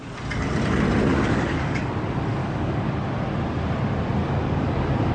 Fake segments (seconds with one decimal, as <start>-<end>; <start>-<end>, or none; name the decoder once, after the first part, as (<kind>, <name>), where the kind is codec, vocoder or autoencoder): 1.1-1.8 (codec, DAC); 2.4-2.9; 4.2-5.1